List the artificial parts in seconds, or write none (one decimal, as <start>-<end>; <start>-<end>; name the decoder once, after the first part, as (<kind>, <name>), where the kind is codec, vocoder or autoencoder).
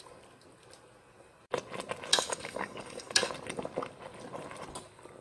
2.1-3.3 (codec, DAC)